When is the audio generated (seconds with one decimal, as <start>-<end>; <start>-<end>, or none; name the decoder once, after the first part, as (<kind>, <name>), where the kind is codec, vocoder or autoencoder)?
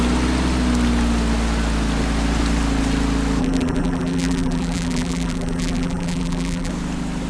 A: 3.4-6.7 (vocoder, BigVGAN v2)